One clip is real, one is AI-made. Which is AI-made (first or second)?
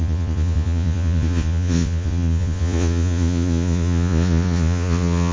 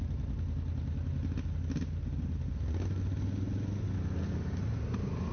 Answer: first